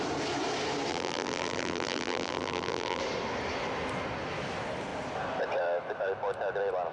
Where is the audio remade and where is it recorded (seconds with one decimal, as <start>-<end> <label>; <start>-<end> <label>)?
0.0-0.9 recorded; 0.9-3.0 remade; 3.0-6.9 recorded